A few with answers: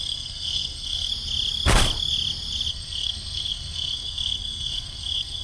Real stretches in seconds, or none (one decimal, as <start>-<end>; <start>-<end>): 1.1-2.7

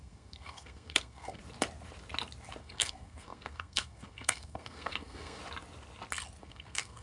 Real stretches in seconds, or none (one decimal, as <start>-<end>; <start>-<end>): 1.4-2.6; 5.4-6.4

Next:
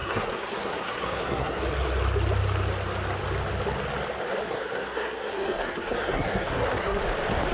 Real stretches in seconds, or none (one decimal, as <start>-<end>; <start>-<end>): 1.6-4.4; 7.0-7.5

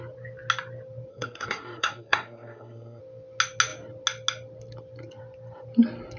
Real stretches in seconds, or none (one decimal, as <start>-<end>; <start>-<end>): 0.0-1.1; 3.0-6.2

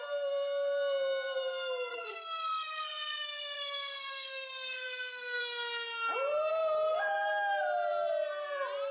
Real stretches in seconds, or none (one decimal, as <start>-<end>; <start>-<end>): 0.0-1.9; 5.4-8.9